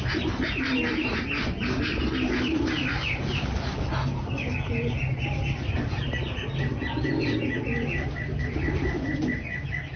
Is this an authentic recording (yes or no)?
yes